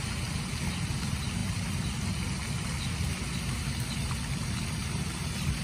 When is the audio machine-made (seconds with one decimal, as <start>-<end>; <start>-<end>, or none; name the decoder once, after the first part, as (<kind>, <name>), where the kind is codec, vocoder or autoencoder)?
none